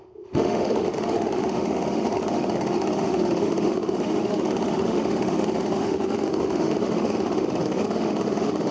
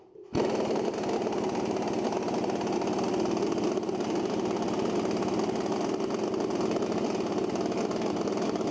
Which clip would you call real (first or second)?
second